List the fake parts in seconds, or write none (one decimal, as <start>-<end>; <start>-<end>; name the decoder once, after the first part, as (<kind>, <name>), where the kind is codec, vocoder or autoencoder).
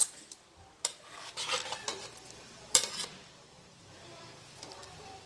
1.9-4.8 (vocoder, BigVGAN v2)